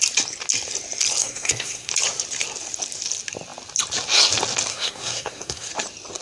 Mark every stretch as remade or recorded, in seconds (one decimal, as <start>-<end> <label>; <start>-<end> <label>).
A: 0.0-1.2 recorded; 1.2-1.9 remade; 1.9-4.7 recorded; 4.7-5.7 remade; 5.7-6.2 recorded